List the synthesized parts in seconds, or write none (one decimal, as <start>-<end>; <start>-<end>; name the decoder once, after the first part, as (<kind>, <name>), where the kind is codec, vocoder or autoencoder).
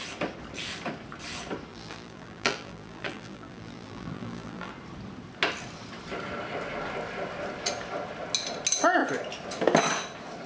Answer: 1.7-4.7 (vocoder, BigVGAN v2)